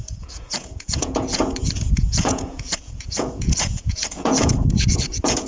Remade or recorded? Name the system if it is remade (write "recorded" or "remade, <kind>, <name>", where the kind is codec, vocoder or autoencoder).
remade, vocoder, Vocos